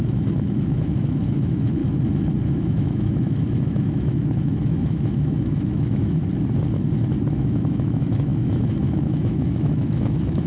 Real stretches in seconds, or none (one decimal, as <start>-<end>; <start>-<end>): 1.8-2.5; 6.2-7.3